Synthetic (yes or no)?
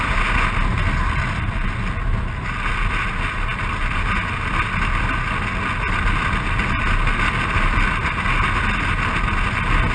no